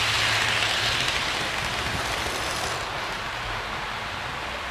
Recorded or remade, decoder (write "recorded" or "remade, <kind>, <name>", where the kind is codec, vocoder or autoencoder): recorded